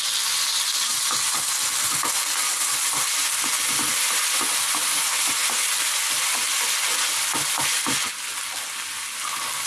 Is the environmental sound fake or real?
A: real